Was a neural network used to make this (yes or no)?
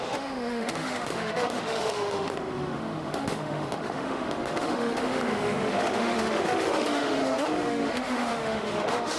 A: yes